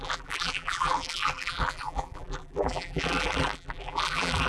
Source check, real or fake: fake